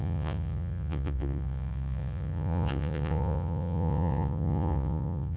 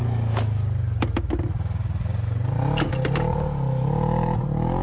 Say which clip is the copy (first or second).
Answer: first